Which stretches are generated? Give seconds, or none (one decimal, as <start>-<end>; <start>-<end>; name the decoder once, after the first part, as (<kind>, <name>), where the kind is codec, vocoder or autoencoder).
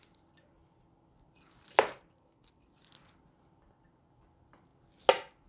none